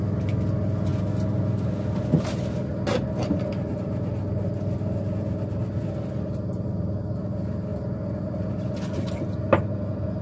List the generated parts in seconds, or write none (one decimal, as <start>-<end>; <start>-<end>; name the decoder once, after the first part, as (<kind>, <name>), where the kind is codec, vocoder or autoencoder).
none